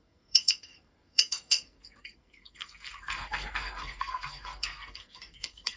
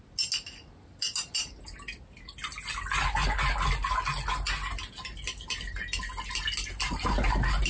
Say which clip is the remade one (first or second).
first